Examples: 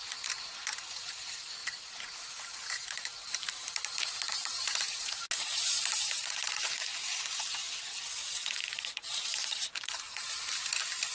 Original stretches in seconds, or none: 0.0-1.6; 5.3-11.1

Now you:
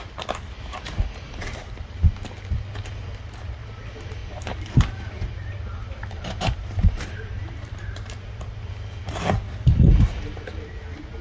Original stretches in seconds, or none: 0.0-4.2; 8.7-11.2

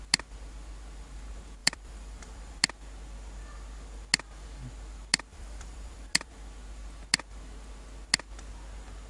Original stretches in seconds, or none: 0.0-1.6; 2.6-5.3; 6.3-9.1

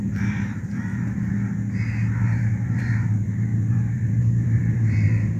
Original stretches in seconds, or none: 1.3-2.2

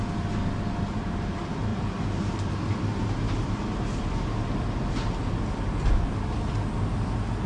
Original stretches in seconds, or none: 0.0-1.7; 4.9-7.5

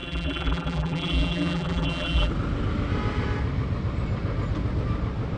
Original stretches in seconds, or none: 2.3-5.4

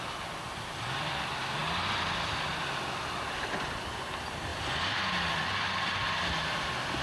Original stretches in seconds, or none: 0.0-7.0

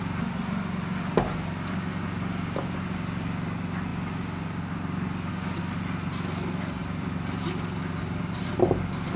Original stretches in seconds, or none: 0.0-6.8; 8.5-9.2